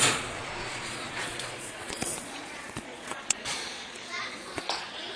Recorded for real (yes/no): no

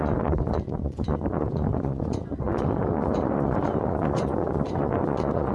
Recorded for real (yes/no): no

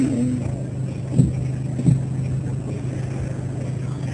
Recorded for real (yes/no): yes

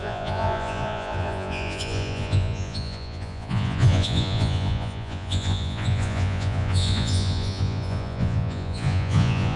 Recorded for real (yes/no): no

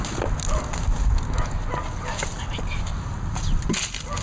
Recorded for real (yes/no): yes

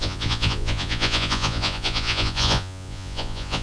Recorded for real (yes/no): no